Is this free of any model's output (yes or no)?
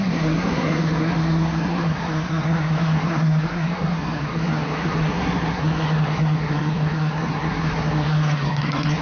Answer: no